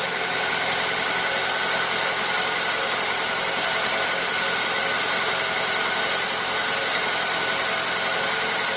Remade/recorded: recorded